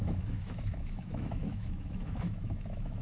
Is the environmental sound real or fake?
fake